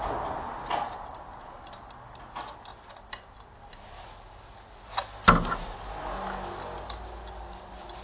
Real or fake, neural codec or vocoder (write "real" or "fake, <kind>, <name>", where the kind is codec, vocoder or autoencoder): real